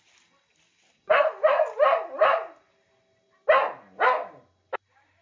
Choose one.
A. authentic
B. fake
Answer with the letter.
A